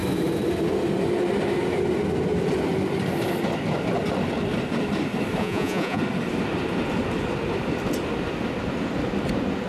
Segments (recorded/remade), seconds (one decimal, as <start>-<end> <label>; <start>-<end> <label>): 0.0-5.4 recorded; 5.4-6.0 remade; 6.0-9.7 recorded